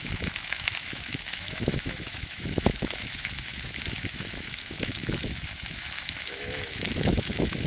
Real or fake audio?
fake